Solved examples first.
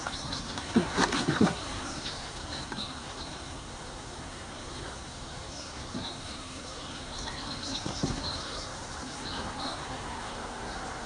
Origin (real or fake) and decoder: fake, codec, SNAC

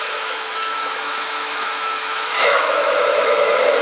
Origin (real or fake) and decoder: fake, autoencoder, DAC-VAE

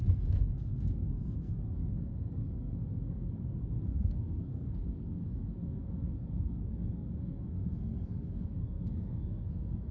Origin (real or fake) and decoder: fake, codec, SNAC